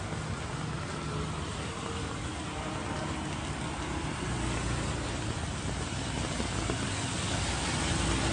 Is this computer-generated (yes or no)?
no